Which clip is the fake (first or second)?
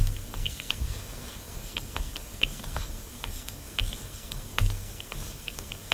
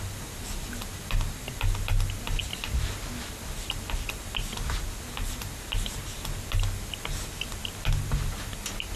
first